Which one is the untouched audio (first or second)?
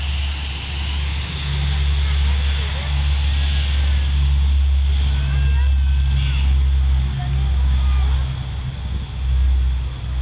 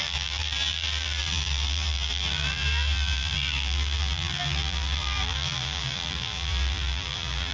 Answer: first